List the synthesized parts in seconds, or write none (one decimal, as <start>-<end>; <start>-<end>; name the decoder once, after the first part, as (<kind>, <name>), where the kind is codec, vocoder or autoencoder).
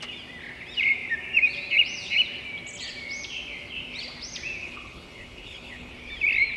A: 4.6-5.9 (codec, HILCodec)